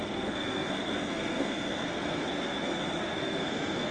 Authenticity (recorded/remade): remade